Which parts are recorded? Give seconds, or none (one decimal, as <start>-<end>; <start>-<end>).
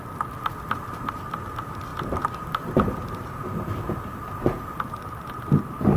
0.0-6.0